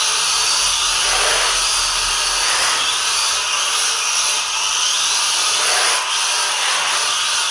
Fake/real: real